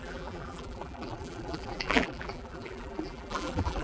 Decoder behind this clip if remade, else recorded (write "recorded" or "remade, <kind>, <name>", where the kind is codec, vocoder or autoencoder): remade, vocoder, BigVGAN v2